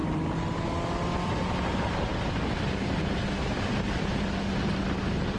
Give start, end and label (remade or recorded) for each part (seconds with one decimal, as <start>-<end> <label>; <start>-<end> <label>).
0.0-5.4 recorded